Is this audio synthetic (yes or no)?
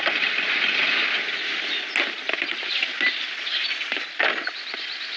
no